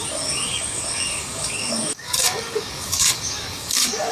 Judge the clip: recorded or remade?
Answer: remade